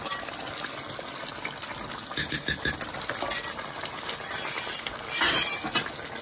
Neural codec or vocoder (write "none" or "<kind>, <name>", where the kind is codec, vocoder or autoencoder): none